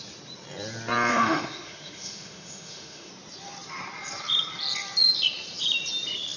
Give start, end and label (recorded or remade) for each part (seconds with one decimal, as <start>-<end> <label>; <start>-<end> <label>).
0.0-1.1 recorded; 1.1-3.1 remade; 3.1-6.4 recorded